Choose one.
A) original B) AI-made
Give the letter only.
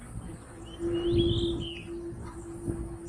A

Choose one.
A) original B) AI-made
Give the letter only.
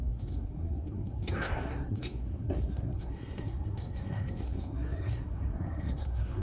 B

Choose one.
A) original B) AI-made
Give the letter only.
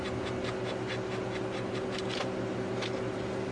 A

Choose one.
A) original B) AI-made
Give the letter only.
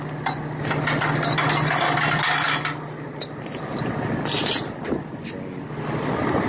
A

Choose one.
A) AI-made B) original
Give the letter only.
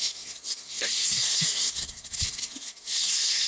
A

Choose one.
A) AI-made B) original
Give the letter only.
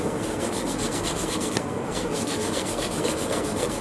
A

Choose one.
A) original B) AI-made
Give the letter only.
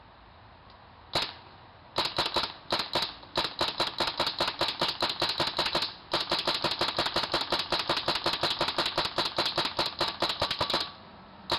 A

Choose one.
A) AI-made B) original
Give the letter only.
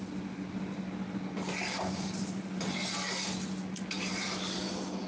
B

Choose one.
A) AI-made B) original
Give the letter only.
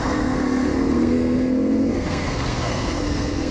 A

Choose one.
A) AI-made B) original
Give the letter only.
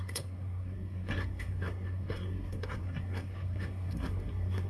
A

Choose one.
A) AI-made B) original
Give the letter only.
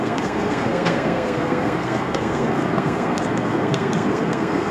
A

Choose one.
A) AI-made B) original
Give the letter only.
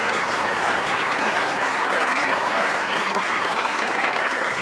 A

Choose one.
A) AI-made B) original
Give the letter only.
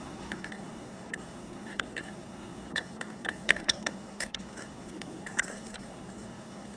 A